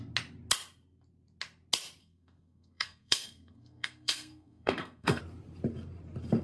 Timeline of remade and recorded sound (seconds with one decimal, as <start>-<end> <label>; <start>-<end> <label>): 0.0-2.0 recorded; 2.0-5.2 remade; 5.2-6.4 recorded